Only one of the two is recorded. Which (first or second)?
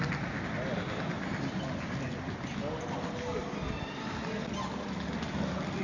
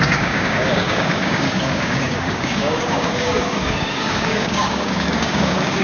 first